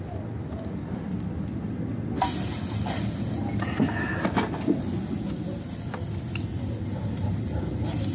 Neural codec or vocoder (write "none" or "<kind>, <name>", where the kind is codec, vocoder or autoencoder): none